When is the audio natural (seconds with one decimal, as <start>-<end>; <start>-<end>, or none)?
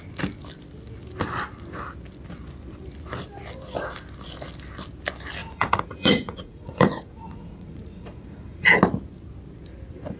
0.0-5.4; 8.8-10.2